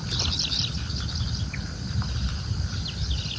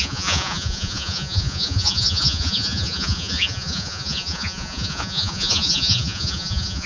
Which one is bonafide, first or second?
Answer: first